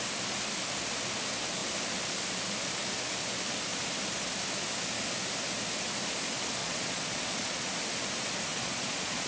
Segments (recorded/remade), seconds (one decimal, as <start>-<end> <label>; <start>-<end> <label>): 0.0-6.6 recorded; 6.6-7.7 remade; 7.7-8.5 recorded; 8.5-9.3 remade

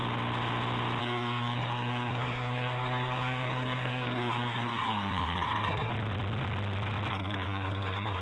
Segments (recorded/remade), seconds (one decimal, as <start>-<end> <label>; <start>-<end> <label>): 0.0-1.0 recorded; 1.0-5.9 remade; 5.9-7.1 recorded; 7.1-8.2 remade

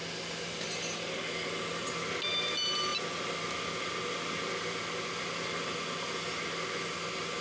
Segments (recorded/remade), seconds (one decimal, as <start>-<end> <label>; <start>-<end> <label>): 0.0-7.4 recorded

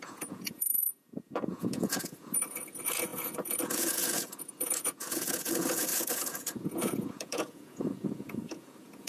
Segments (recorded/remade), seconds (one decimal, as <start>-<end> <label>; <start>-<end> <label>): 0.0-9.1 remade

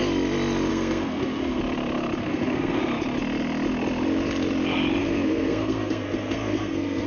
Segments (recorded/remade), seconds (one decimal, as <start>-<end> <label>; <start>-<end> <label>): 0.0-0.7 recorded; 0.7-1.6 remade; 1.6-2.2 recorded; 2.2-2.8 remade; 2.8-5.0 recorded; 5.0-7.1 remade

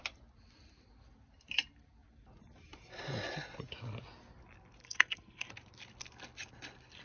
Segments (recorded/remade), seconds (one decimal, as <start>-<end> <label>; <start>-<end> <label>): 0.0-4.8 recorded; 4.8-5.5 remade; 5.5-7.0 recorded

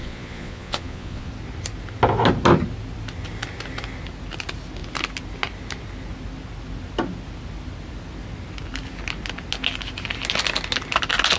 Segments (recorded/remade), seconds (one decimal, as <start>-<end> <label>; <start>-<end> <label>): 0.0-1.3 remade; 1.3-11.4 recorded

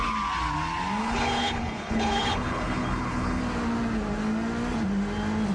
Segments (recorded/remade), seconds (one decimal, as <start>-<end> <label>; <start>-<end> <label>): 0.0-1.0 recorded; 1.0-3.4 remade; 3.4-5.5 recorded